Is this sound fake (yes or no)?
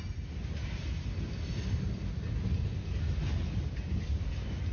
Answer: no